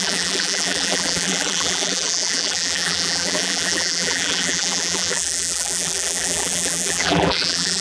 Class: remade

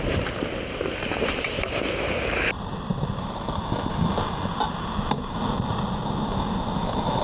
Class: recorded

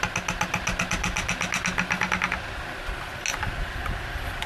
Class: recorded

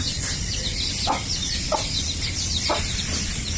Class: remade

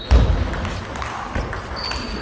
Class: recorded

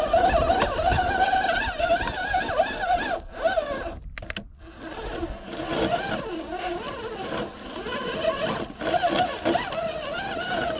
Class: recorded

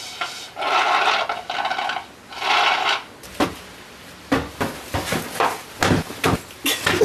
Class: recorded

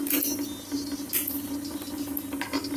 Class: recorded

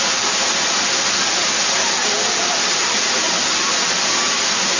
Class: recorded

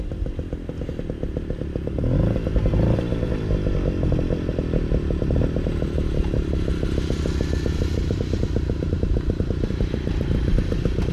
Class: remade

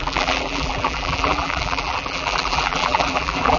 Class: remade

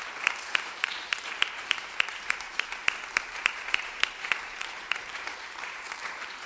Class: remade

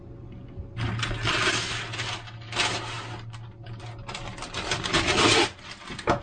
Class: recorded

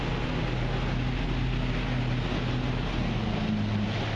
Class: recorded